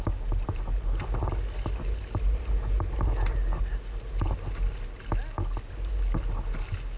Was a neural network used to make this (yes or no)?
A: no